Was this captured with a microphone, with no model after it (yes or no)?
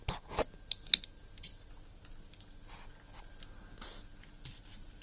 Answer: yes